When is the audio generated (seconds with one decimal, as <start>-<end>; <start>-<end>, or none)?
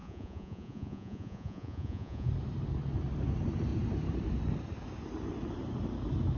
0.0-2.3